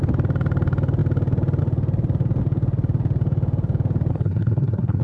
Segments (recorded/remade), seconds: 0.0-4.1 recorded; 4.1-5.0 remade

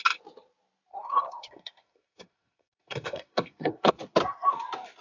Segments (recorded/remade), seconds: 0.0-0.9 recorded; 0.9-3.9 remade; 3.9-5.0 recorded

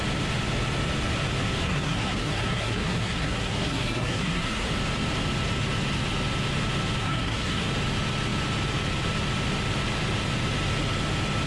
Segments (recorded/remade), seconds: 0.0-1.6 recorded; 1.6-4.7 remade; 4.7-7.0 recorded; 7.0-7.7 remade; 7.7-11.5 recorded

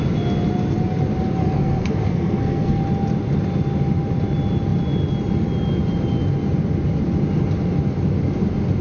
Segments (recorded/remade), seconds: 0.0-1.4 recorded; 1.4-2.8 remade; 2.8-8.8 recorded

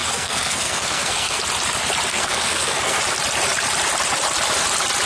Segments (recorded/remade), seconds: 0.0-1.4 remade; 1.4-2.1 recorded; 2.1-3.0 remade; 3.0-5.1 recorded

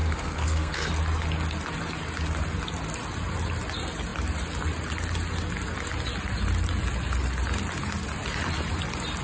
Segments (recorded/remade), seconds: 0.0-0.9 remade; 0.9-9.2 recorded

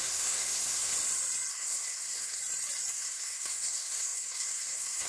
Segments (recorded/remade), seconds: 0.0-0.9 remade; 0.9-1.5 recorded; 1.5-2.4 remade; 2.4-2.9 recorded; 2.9-5.1 remade

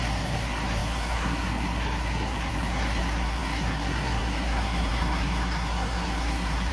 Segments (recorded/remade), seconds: 0.0-6.7 remade